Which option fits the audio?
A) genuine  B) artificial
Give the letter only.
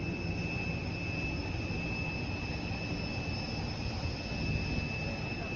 A